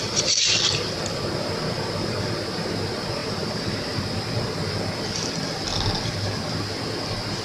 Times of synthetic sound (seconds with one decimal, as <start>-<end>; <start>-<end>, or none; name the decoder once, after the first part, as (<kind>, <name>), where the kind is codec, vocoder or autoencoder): 3.2-4.0 (vocoder, BigVGAN v2)